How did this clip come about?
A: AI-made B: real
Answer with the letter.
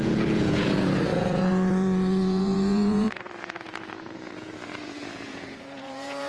A